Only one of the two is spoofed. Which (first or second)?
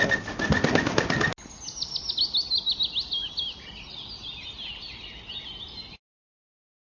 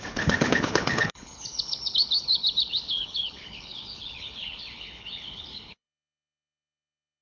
second